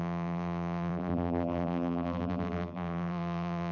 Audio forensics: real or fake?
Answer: fake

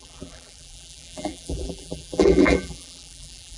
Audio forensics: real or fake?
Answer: fake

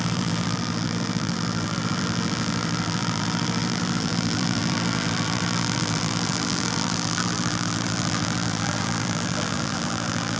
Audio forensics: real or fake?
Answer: fake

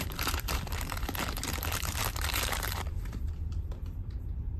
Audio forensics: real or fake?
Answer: fake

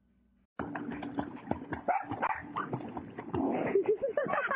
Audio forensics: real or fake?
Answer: fake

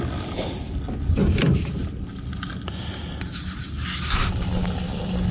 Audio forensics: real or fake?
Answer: real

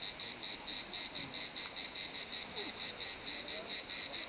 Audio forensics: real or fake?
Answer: real